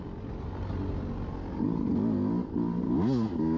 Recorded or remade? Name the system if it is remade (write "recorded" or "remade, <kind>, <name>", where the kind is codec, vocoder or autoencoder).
recorded